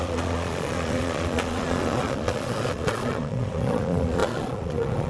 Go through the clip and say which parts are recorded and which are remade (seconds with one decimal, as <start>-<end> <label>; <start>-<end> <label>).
0.0-5.1 remade

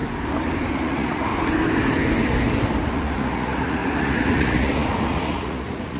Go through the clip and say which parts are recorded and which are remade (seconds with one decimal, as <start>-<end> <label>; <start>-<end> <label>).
0.0-0.7 recorded; 0.7-1.3 remade; 1.3-2.9 recorded; 2.9-6.0 remade

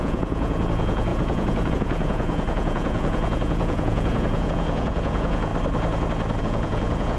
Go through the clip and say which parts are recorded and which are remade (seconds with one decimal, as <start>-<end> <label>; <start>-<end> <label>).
0.0-5.5 remade; 5.5-6.4 recorded; 6.4-7.2 remade

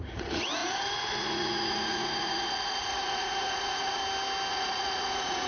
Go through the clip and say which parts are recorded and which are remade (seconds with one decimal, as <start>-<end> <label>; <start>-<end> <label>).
0.0-4.0 remade; 4.0-4.5 recorded; 4.5-5.5 remade

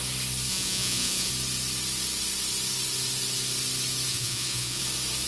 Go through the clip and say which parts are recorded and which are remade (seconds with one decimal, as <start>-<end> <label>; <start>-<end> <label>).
0.0-0.5 recorded; 0.5-1.3 remade; 1.3-4.1 recorded; 4.1-4.8 remade; 4.8-5.3 recorded

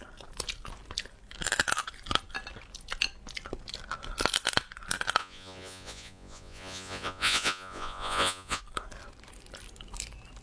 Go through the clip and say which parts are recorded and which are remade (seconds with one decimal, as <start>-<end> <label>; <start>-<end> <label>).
0.0-5.2 recorded; 5.2-8.6 remade; 8.6-10.4 recorded